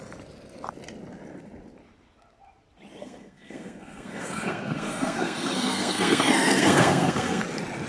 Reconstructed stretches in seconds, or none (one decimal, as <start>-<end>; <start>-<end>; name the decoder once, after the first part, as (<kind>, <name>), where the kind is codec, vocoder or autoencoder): 3.0-7.4 (codec, SNAC)